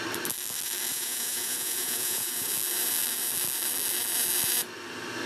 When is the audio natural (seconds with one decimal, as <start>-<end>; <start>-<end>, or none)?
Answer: 0.0-0.9; 2.5-5.3